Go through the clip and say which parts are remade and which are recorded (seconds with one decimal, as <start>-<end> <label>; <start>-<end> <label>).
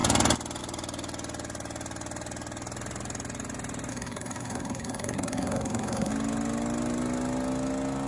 0.0-3.9 recorded; 3.9-6.1 remade; 6.1-8.1 recorded